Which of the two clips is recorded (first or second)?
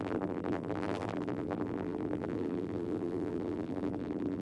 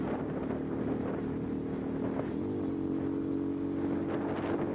second